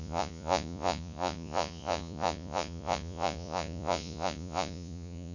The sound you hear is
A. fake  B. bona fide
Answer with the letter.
A